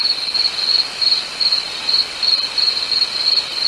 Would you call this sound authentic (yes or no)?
yes